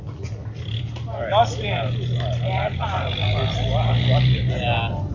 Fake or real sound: real